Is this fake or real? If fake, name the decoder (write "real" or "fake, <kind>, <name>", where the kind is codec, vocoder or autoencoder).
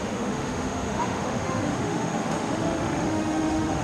fake, autoencoder, DAC-VAE